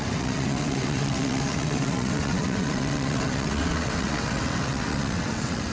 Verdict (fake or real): fake